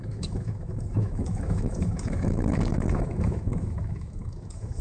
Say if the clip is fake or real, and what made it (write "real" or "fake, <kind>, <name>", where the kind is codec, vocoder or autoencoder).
fake, autoencoder, DAC-VAE